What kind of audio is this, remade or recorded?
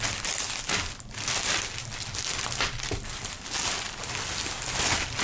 recorded